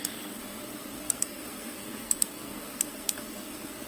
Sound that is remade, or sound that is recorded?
remade